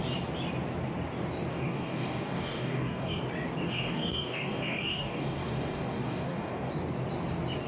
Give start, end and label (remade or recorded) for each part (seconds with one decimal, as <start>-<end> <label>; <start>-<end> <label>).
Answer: 0.0-1.5 recorded; 1.5-3.2 remade; 3.2-3.6 recorded; 3.6-6.7 remade; 6.7-7.7 recorded